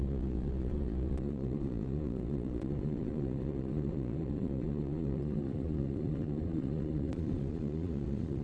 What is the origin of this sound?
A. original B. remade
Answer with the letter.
B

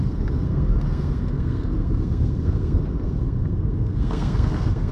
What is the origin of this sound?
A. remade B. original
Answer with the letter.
A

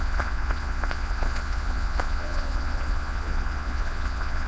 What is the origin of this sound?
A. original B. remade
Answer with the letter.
B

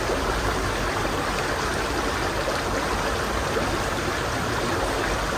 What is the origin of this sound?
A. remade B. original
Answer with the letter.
B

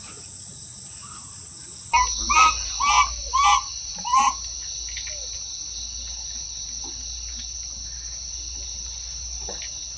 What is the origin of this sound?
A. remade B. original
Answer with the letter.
B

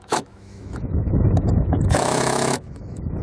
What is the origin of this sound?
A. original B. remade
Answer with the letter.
B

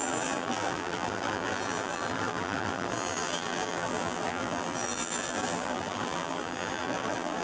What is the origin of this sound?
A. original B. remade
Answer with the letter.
B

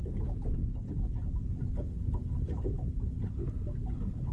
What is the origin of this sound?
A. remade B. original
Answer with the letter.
B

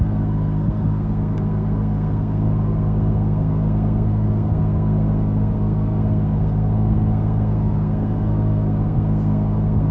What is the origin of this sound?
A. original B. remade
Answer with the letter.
B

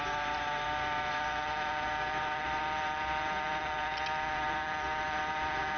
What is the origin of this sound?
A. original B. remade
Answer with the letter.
B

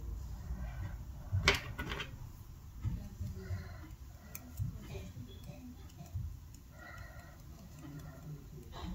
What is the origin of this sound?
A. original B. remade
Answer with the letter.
A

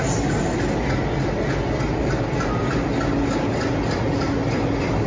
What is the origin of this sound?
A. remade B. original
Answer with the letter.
B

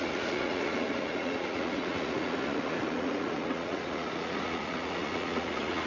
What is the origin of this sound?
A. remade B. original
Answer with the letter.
A